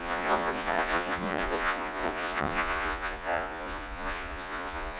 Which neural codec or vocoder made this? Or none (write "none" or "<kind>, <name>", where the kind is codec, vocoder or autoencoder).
vocoder, Vocos